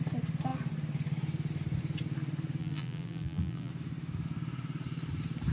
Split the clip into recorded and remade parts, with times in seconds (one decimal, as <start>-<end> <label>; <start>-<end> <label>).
0.0-2.6 recorded; 2.6-3.7 remade; 3.7-5.5 recorded